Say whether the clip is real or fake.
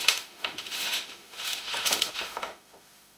fake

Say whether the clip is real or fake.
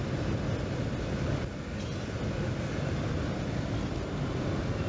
real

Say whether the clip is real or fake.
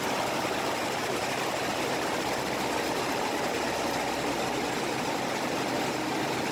real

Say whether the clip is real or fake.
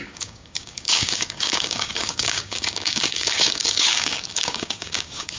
fake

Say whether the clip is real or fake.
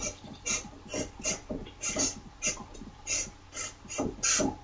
real